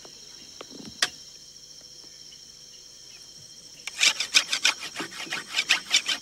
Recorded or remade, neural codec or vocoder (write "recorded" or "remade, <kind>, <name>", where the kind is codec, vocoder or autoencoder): recorded